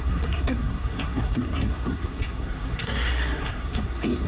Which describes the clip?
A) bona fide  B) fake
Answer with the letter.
B